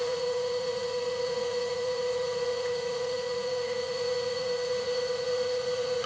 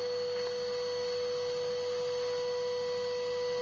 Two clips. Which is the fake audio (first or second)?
first